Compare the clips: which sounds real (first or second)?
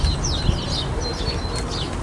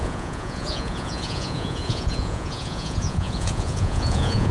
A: first